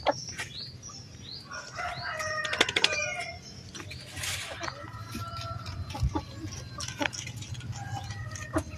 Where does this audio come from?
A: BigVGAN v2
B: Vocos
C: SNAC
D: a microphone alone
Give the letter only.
D